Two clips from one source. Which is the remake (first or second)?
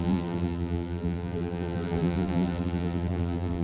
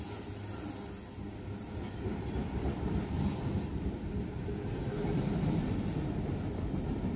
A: first